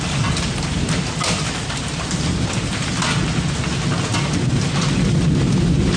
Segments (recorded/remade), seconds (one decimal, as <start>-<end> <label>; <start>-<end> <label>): 0.0-6.0 recorded